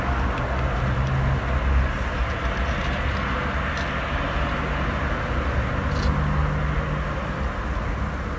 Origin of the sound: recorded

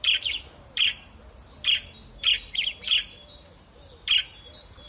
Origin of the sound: remade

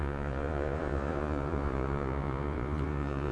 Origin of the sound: remade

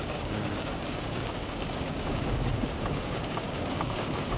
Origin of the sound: remade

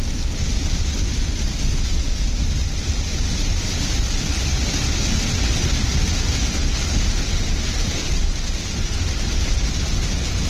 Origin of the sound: recorded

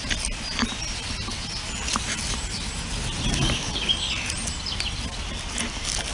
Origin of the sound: recorded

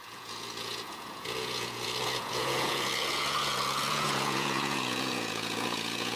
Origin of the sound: remade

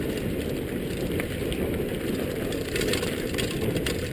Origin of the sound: remade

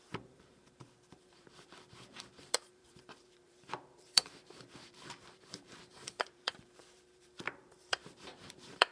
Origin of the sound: remade